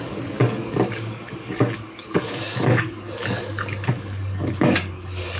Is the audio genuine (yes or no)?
no